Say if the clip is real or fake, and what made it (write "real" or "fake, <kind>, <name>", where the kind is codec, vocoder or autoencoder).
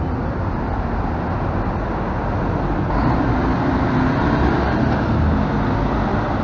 real